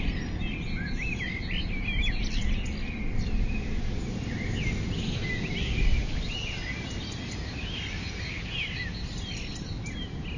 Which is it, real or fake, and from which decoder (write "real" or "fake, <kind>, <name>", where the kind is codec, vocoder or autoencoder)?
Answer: real